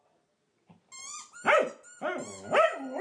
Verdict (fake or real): real